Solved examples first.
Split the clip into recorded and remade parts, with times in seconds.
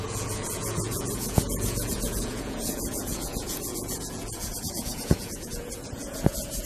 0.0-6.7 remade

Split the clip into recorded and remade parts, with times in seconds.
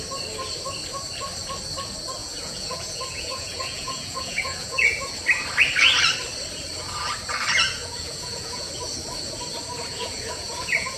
0.0-2.2 recorded; 2.2-5.2 remade; 5.2-7.8 recorded; 7.8-8.7 remade; 8.7-9.9 recorded; 9.9-11.0 remade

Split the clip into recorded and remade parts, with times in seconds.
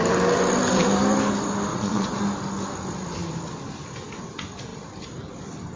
0.0-1.7 recorded; 1.7-2.2 remade; 2.2-5.8 recorded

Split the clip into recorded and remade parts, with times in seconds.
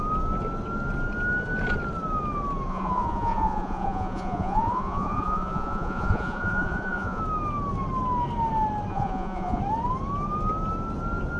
0.0-2.7 recorded; 2.7-7.2 remade; 7.2-8.9 recorded; 8.9-9.6 remade; 9.6-11.4 recorded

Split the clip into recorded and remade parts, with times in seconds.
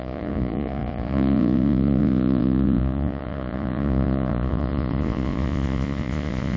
0.0-6.6 remade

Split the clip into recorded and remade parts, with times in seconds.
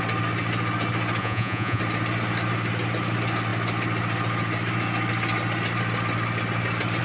0.0-1.2 recorded; 1.2-1.8 remade; 1.8-7.0 recorded